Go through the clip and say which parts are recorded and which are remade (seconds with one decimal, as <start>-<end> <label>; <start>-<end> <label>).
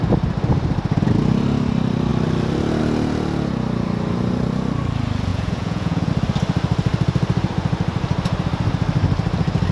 0.0-5.3 recorded; 5.3-6.1 remade; 6.1-9.7 recorded